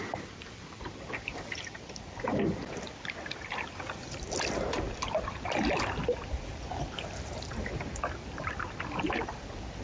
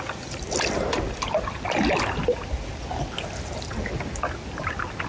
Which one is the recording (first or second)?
second